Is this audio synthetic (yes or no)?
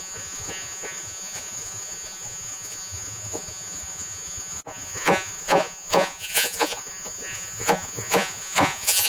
yes